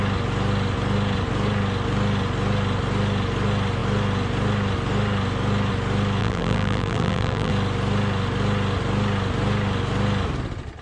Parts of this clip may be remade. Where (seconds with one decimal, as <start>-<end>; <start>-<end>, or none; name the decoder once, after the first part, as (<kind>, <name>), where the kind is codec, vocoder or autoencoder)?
6.2-7.5 (vocoder, BigVGAN v2)